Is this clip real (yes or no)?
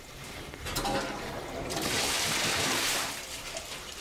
no